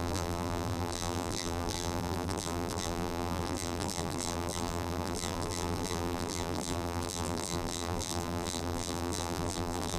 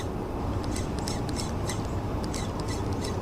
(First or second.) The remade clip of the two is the first